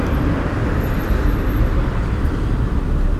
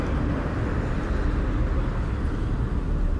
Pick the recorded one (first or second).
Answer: second